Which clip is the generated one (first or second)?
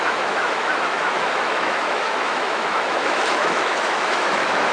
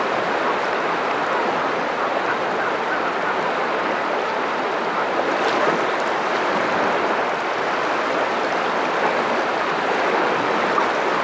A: first